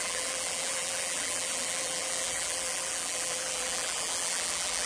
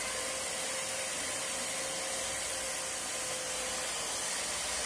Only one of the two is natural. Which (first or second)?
second